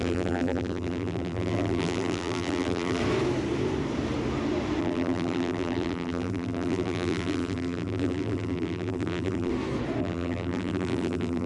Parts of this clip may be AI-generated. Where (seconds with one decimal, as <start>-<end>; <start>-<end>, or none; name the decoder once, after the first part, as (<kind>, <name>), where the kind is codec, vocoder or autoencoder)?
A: 0.0-3.0 (vocoder, BigVGAN v2); 4.8-9.5; 10.0-11.5